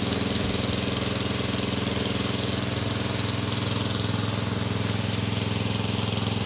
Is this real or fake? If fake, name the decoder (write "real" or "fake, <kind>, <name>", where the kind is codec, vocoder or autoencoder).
real